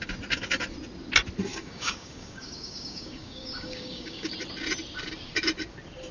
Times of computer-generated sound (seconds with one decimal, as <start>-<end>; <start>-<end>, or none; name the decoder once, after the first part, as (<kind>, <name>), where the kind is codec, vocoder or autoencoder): 1.5-4.3 (codec, DAC)